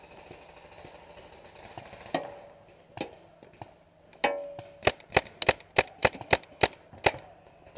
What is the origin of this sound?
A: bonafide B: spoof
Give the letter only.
A